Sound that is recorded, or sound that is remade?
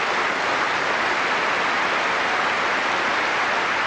recorded